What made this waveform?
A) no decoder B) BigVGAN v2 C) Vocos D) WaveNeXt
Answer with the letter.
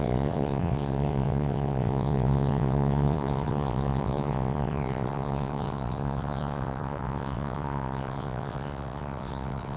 D